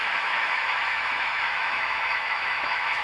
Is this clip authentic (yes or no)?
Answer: no